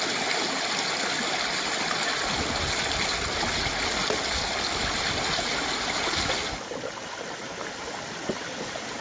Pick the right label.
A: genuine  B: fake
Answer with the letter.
A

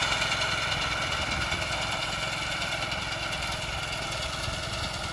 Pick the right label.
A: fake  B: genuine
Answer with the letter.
B